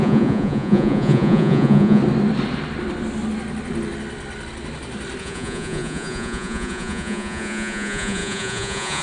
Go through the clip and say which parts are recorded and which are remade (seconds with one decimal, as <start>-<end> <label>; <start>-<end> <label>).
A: 0.0-2.0 remade; 2.0-5.2 recorded; 5.2-9.0 remade